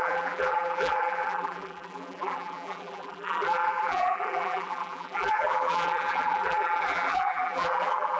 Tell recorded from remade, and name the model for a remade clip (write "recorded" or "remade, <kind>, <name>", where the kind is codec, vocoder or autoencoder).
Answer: remade, vocoder, BigVGAN v2